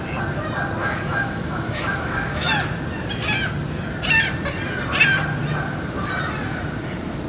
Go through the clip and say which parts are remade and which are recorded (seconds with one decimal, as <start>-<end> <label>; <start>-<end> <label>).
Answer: 0.0-0.8 recorded; 0.8-2.5 remade; 2.5-7.3 recorded